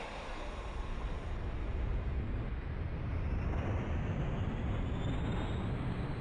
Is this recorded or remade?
recorded